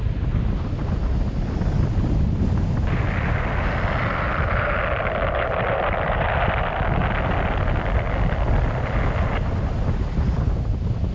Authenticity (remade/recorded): recorded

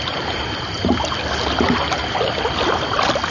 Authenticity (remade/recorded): recorded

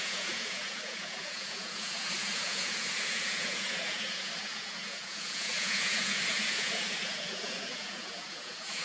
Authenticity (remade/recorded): remade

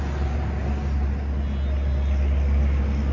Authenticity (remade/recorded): recorded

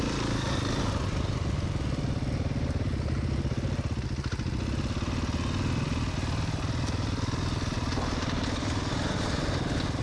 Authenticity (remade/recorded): recorded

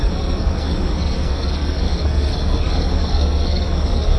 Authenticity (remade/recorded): remade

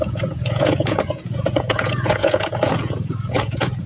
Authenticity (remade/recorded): remade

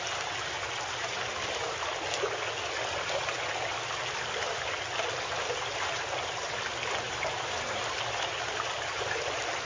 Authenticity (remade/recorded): recorded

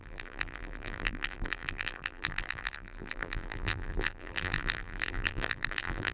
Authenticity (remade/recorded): remade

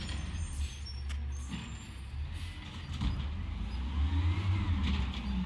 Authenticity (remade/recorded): recorded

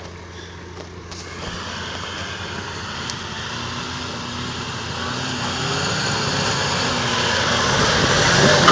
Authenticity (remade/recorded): recorded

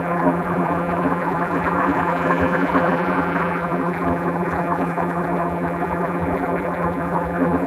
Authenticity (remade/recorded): remade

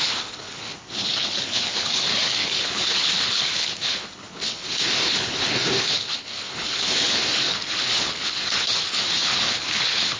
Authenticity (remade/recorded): remade